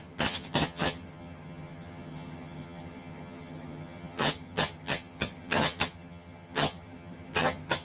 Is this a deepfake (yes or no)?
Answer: yes